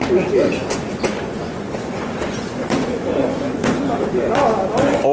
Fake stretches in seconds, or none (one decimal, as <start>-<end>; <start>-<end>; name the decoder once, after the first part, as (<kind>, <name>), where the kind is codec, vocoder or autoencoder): 0.6-3.7 (vocoder, Vocos)